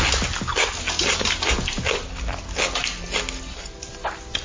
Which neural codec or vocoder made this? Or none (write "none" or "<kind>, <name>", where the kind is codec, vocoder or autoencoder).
none